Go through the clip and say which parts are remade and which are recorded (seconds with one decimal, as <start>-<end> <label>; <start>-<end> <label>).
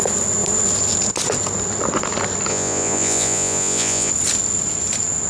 0.0-2.5 recorded; 2.5-4.1 remade; 4.1-5.3 recorded